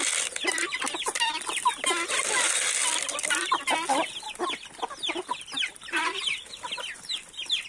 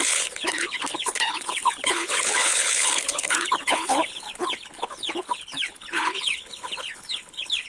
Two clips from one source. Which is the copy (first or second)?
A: second